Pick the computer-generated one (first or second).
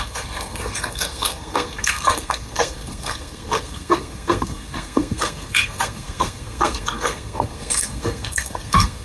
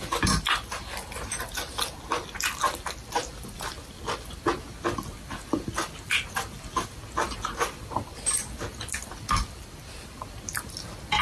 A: first